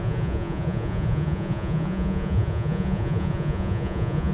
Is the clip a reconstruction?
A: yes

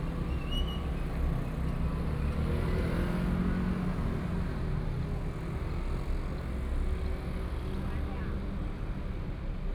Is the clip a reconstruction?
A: no